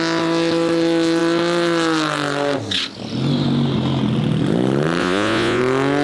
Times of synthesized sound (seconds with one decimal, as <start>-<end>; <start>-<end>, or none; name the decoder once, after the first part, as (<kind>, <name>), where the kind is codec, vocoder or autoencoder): 5.0-5.6 (vocoder, Vocos)